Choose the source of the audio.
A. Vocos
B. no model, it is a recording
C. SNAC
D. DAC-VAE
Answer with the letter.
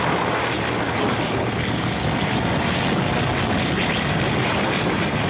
B